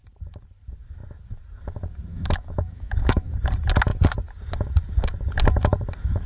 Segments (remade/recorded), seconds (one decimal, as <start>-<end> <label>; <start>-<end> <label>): 0.0-2.1 recorded; 2.1-3.3 remade; 3.3-6.3 recorded